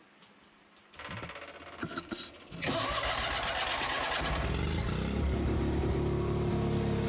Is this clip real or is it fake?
real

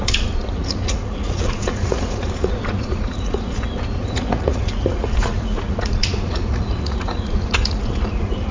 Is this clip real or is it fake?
fake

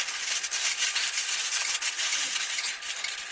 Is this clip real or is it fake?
real